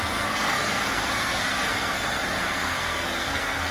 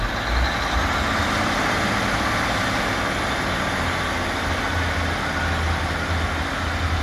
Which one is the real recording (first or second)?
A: second